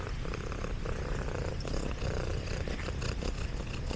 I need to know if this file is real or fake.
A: real